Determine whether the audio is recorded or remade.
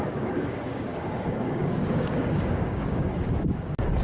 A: remade